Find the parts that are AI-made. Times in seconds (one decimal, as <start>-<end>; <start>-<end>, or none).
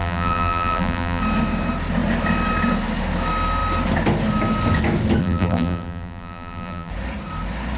0.0-1.2; 5.2-6.9